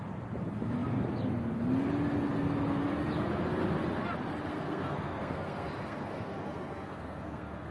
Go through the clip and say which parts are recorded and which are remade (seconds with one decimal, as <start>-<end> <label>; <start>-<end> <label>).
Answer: 0.0-4.5 recorded; 4.5-7.7 remade